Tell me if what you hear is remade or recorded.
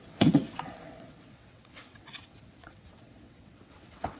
remade